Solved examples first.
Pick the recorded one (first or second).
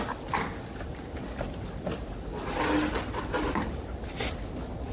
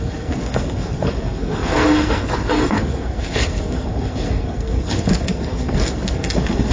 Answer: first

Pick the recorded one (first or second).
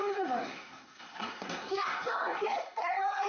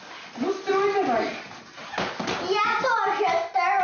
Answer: second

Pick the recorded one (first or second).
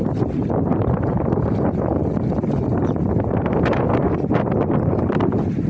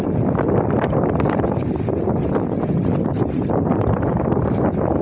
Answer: second